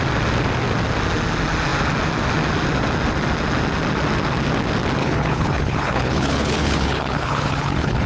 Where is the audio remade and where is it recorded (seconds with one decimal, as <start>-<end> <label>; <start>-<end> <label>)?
0.0-5.0 recorded; 5.0-8.1 remade